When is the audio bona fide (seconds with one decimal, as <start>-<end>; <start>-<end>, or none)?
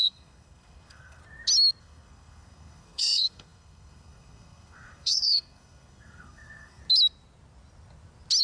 1.2-1.8; 6.8-8.4